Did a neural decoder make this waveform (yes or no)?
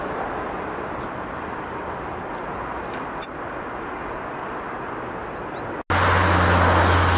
no